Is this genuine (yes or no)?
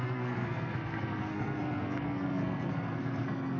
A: no